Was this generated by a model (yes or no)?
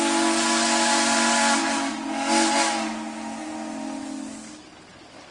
no